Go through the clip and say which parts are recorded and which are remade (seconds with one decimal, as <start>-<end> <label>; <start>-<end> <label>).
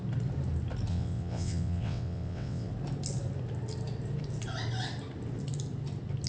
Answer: 0.0-0.9 recorded; 0.9-2.7 remade; 2.7-6.3 recorded